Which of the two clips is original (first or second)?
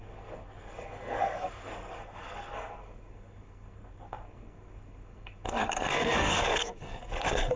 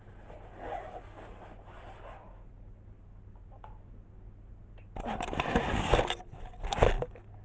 second